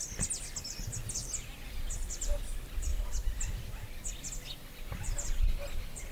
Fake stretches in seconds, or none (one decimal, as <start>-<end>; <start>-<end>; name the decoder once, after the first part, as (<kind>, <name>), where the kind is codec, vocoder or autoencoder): 1.2-2.4 (vocoder, BigVGAN v2)